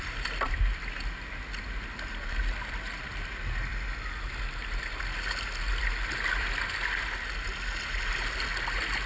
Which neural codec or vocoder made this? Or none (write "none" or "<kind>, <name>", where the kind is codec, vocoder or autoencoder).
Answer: none